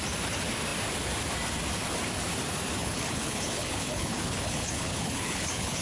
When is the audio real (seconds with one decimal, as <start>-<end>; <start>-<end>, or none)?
0.0-2.8